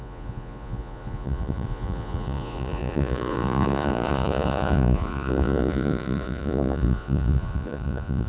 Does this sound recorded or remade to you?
remade